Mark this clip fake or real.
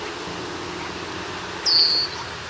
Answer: real